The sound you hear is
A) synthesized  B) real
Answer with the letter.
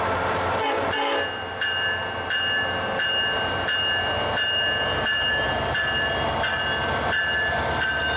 B